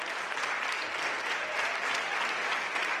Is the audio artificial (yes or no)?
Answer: no